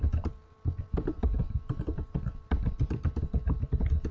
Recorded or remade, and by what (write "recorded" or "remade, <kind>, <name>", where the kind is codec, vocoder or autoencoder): remade, vocoder, BigVGAN v2